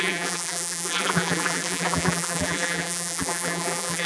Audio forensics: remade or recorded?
remade